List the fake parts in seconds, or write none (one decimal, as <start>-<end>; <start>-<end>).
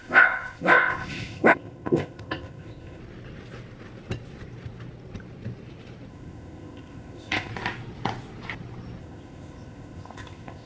0.0-3.0; 6.1-7.5; 9.0-10.7